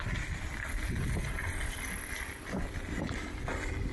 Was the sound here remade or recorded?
recorded